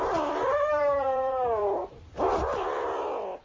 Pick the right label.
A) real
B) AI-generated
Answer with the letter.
B